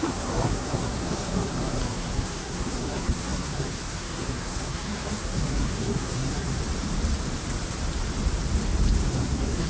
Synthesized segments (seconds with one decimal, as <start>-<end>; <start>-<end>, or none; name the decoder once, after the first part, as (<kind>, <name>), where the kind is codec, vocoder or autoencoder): 0.0-6.6 (codec, SNAC); 9.1-9.7